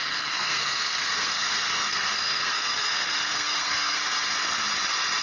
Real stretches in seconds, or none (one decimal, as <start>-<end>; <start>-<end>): 4.0-5.2